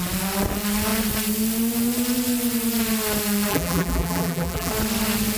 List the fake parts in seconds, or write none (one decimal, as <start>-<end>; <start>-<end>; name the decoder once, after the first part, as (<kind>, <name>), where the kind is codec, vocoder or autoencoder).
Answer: 3.5-4.7 (vocoder, BigVGAN v2)